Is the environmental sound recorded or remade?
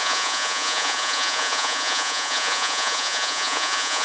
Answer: remade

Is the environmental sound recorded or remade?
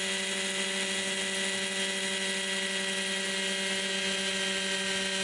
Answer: recorded